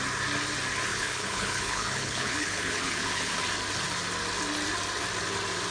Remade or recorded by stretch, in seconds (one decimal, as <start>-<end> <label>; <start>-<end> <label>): 0.0-0.9 recorded; 0.9-3.3 remade; 3.3-5.7 recorded